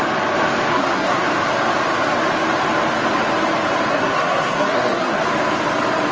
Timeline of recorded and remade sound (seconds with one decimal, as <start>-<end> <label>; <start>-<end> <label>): 0.0-0.7 recorded; 0.7-1.2 remade; 1.2-3.9 recorded; 3.9-5.2 remade; 5.2-6.1 recorded